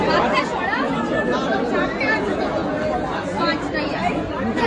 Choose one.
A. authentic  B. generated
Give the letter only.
A